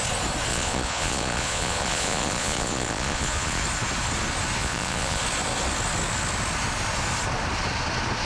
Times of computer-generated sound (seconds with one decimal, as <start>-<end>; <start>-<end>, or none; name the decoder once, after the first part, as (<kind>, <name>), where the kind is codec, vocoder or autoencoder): 0.5-3.6 (vocoder, Vocos); 4.6-5.2